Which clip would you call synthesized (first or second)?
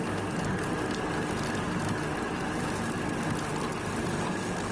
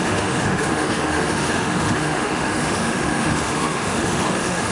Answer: second